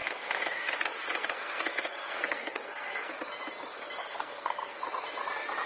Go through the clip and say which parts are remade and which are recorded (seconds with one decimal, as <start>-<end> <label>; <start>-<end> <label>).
0.0-3.1 remade; 3.1-4.0 recorded; 4.0-4.8 remade; 4.8-5.7 recorded